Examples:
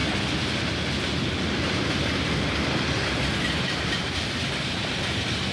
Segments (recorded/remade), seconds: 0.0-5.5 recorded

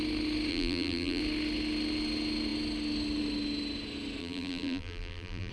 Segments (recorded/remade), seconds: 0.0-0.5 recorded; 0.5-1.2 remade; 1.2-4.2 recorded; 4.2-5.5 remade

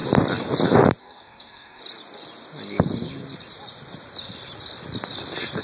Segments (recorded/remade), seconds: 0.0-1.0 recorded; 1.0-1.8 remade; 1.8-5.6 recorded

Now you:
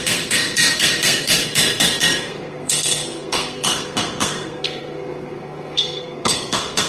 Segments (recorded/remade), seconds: 0.0-6.9 remade

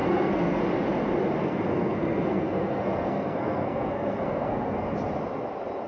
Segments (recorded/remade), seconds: 0.0-0.6 remade; 0.6-1.4 recorded; 1.4-4.9 remade; 4.9-5.9 recorded